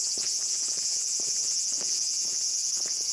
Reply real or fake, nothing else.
fake